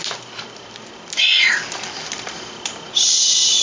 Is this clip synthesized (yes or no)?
no